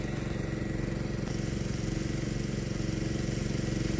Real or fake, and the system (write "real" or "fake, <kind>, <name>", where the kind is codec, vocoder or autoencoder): real